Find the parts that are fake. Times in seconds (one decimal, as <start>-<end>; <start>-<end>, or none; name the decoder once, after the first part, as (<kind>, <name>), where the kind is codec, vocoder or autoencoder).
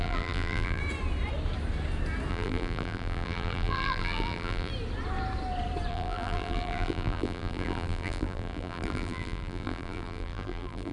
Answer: 0.0-0.8 (vocoder, BigVGAN v2); 2.3-4.7; 5.9-10.9